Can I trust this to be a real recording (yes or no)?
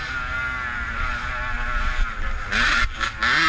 yes